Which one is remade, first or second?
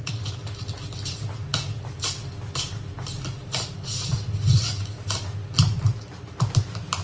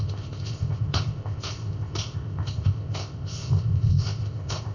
second